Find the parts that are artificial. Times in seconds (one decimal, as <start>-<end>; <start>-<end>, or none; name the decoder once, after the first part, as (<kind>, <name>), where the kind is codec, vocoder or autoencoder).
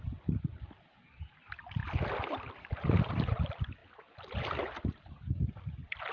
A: none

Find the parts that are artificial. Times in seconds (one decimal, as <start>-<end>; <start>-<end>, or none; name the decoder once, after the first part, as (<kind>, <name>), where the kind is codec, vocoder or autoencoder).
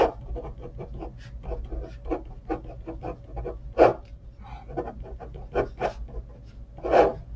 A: 3.9-4.4 (vocoder, BigVGAN v2)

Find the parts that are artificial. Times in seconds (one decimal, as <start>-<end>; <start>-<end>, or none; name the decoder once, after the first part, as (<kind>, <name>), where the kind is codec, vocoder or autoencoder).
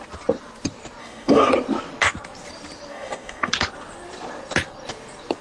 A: 1.0-1.5 (codec, DAC); 2.9-3.5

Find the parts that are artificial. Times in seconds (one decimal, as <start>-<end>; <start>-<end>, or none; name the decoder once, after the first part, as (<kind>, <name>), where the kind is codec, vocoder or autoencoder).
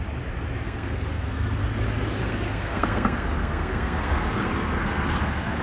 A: 0.6-1.6 (codec, SNAC); 2.2-5.6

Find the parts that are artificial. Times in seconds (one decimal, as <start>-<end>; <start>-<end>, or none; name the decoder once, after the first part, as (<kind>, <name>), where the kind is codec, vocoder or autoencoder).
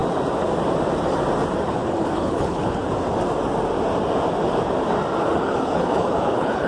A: 1.6-2.8 (codec, HILCodec); 5.2-6.7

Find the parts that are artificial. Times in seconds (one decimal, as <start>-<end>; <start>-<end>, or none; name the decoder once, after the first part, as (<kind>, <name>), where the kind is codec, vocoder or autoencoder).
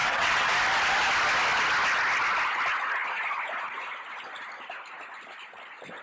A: 0.0-0.5 (vocoder, WaveNeXt)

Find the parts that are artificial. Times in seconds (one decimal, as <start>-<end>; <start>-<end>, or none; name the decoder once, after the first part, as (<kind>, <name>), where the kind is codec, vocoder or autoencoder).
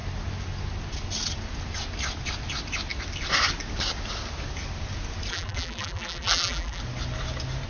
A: 5.3-6.8 (vocoder, BigVGAN v2)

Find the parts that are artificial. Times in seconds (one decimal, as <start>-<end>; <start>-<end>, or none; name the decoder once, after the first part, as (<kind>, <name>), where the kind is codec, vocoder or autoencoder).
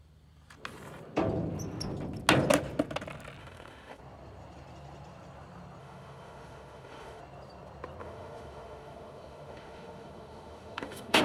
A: 3.4-4.0 (autoencoder, DAC-VAE); 5.8-7.2; 8.0-11.2